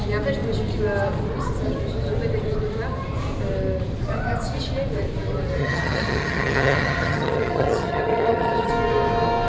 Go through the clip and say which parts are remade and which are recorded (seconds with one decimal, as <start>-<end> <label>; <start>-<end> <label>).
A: 0.0-5.6 recorded; 5.6-8.7 remade; 8.7-9.5 recorded